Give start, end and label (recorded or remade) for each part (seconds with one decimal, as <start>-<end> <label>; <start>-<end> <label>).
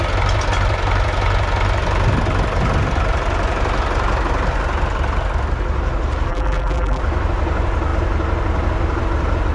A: 0.0-6.3 recorded; 6.3-7.0 remade; 7.0-9.5 recorded